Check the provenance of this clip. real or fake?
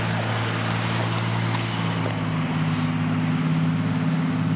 real